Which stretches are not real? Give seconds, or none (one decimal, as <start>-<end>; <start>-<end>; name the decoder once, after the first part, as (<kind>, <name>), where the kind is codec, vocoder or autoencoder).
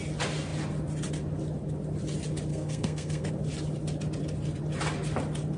2.5-3.3 (codec, SNAC)